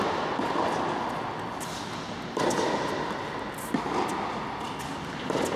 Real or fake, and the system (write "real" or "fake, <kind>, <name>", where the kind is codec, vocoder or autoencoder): real